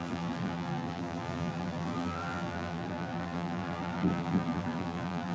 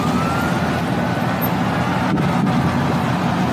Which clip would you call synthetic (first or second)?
first